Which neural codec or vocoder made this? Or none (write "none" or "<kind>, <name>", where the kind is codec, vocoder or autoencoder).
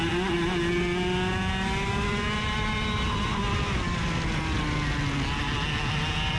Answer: none